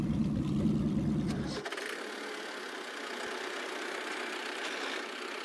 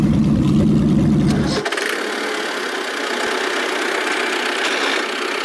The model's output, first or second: first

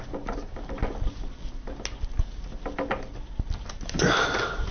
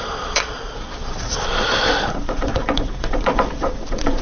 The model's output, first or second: second